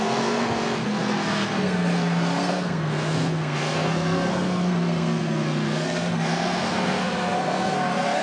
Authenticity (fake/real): fake